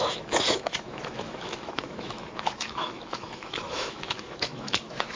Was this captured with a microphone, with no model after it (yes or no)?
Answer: no